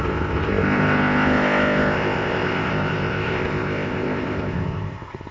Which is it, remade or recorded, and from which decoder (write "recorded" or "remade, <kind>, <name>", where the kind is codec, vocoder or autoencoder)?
remade, codec, ZipCodec